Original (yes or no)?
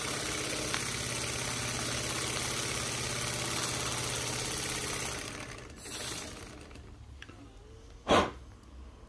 yes